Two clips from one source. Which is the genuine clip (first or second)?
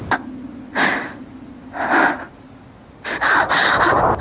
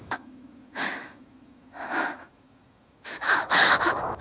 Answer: first